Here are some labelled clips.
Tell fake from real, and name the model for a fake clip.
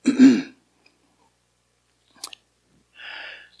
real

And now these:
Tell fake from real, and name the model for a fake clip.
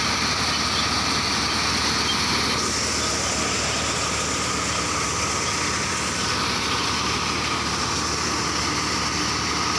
real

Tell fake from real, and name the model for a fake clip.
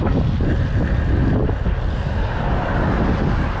real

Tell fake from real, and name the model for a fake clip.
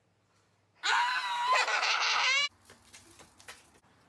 real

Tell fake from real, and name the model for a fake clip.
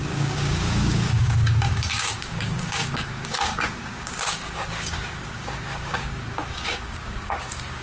fake, codec, DAC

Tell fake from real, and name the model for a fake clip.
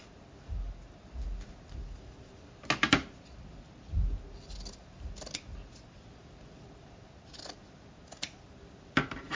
real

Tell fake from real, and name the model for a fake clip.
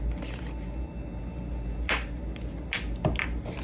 real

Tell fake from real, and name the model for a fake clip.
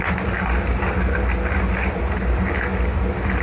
real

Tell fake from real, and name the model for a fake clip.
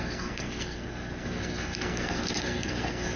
fake, codec, SNAC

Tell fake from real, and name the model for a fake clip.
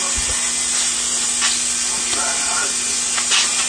real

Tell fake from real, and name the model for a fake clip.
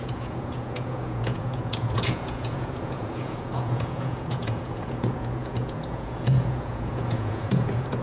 fake, vocoder, Vocos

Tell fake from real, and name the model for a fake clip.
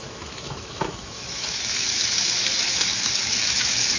fake, autoencoder, DAC-VAE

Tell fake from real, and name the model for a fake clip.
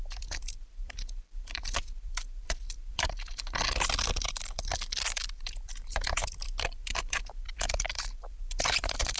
fake, vocoder, BigVGAN v2